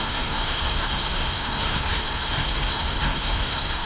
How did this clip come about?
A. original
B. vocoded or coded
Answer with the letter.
B